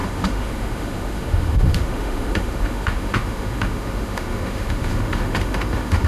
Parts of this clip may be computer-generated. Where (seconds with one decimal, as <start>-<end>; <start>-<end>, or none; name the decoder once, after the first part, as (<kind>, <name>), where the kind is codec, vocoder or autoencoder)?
0.0-6.1 (autoencoder, DAC-VAE)